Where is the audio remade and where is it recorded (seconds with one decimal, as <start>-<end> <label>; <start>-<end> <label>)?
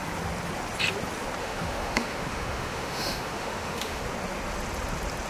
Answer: 0.0-1.4 recorded; 1.4-4.0 remade; 4.0-5.3 recorded